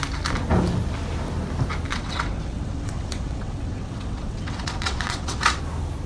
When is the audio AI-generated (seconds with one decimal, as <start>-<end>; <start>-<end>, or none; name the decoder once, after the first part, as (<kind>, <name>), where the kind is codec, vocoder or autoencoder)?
1.9-5.6 (vocoder, WaveNeXt)